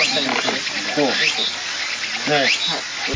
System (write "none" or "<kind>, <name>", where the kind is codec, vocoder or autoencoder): none